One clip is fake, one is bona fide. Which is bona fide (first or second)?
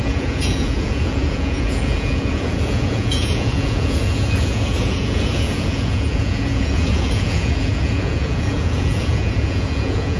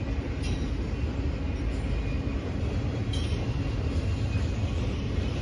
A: second